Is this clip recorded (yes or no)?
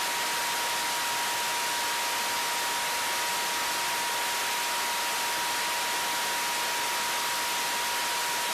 yes